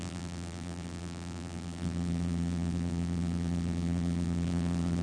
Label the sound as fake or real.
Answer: fake